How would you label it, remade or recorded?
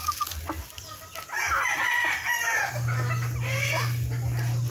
recorded